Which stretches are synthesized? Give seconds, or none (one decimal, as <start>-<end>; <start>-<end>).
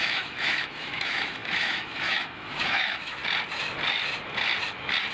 0.0-3.2